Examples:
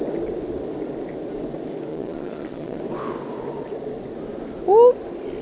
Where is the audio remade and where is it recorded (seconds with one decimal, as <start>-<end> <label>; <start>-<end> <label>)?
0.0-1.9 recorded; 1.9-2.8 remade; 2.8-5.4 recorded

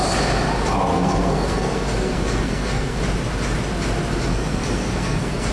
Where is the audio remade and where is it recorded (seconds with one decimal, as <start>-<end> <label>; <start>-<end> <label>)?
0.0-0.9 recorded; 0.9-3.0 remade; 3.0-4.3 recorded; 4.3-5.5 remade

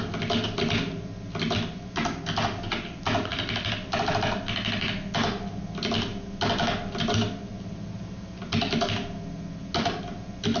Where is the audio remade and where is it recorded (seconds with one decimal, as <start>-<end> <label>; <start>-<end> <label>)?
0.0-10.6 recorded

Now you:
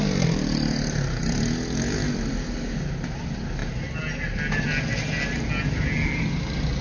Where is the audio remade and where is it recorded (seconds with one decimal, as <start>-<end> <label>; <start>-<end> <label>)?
0.0-6.8 recorded

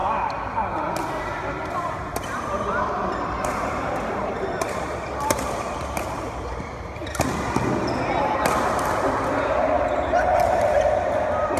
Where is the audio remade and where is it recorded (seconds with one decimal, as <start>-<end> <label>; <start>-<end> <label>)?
0.0-1.2 recorded; 1.2-7.0 remade; 7.0-10.4 recorded; 10.4-11.6 remade

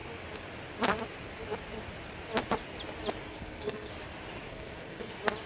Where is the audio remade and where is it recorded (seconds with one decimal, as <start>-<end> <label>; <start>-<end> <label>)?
0.0-3.3 recorded; 3.3-3.9 remade; 3.9-4.5 recorded; 4.5-5.1 remade; 5.1-5.5 recorded